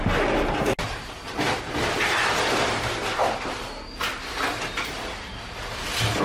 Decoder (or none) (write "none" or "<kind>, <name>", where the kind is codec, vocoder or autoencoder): none